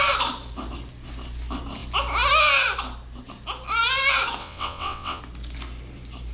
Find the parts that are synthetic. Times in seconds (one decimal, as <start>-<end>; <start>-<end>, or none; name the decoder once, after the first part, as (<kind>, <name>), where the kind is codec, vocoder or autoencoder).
4.4-5.2 (vocoder, WaveNeXt)